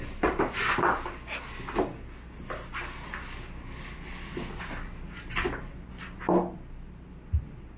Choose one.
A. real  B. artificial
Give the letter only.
A